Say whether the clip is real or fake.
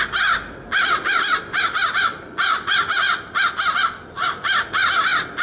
real